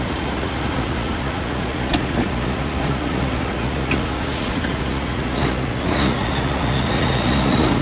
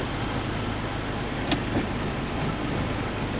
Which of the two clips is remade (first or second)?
first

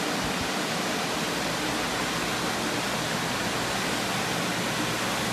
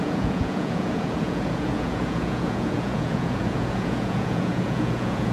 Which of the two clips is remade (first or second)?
second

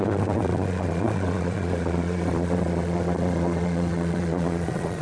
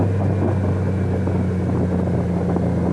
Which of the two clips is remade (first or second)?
first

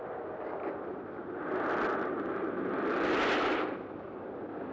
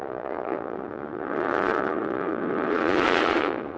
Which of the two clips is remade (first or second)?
second